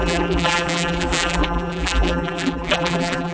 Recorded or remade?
remade